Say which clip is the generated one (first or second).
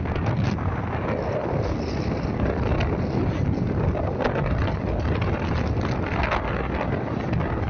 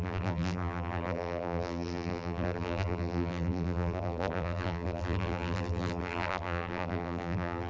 second